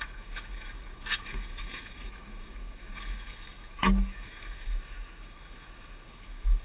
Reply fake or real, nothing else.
fake